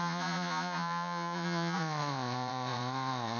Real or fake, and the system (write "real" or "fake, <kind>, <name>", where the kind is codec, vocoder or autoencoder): fake, vocoder, Vocos